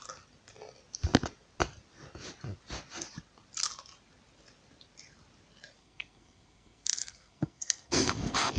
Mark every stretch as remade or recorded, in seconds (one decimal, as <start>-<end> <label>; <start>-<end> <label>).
0.0-5.8 recorded; 5.8-8.6 remade